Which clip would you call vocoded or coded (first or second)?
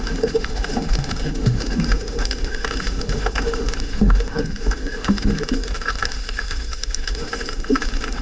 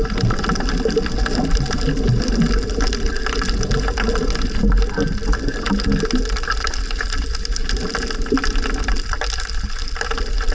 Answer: first